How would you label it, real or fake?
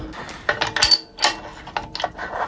real